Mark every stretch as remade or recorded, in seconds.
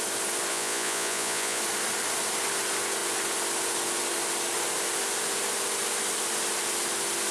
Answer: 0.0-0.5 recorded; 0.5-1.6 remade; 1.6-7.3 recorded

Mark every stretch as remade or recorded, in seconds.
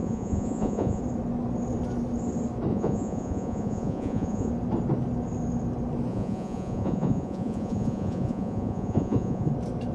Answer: 0.0-1.0 remade; 1.0-2.7 recorded; 2.7-4.5 remade; 4.5-6.1 recorded; 6.1-9.5 remade; 9.5-9.9 recorded